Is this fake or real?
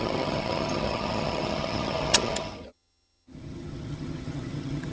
fake